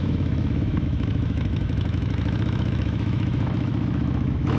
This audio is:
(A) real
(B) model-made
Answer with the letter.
B